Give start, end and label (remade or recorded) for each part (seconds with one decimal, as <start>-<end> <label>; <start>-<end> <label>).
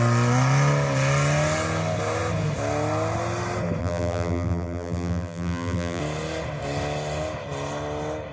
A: 0.0-3.8 recorded; 3.8-6.0 remade; 6.0-8.3 recorded